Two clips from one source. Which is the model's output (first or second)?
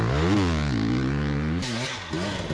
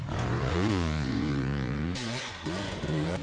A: second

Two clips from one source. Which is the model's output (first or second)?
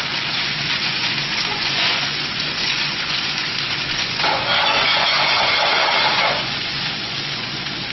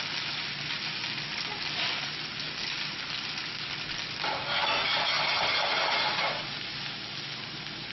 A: first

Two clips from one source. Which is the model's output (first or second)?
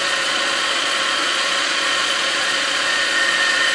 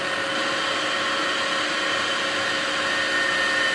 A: first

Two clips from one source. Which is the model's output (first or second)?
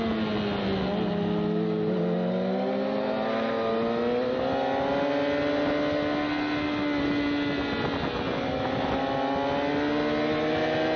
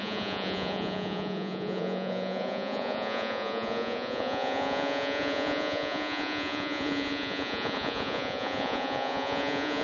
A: second